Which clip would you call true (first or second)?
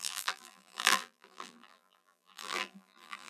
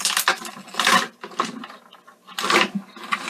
second